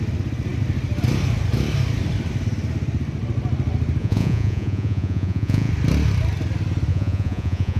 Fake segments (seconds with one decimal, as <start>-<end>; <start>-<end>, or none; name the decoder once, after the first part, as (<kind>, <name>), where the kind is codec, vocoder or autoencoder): 4.0-5.7 (vocoder, Vocos); 6.9-7.8